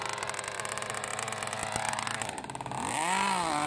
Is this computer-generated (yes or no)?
no